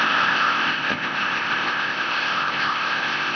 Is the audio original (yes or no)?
no